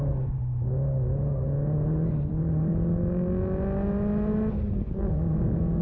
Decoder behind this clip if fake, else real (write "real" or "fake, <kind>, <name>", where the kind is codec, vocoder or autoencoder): real